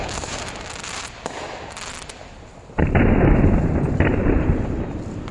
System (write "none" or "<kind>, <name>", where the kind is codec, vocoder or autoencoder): none